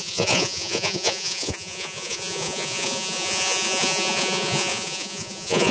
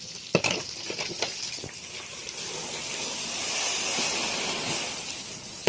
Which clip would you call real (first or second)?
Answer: second